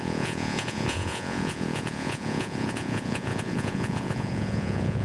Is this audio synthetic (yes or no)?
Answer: yes